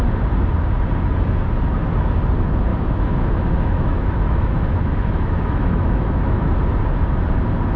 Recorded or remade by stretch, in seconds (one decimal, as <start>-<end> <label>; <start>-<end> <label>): 0.0-2.7 recorded; 2.7-6.5 remade; 6.5-7.8 recorded